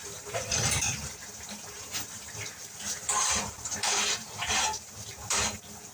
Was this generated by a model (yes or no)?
yes